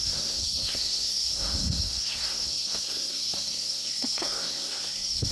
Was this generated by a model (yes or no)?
yes